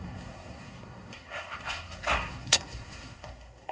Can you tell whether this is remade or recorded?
remade